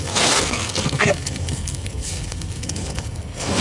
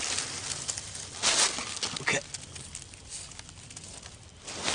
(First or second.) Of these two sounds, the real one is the second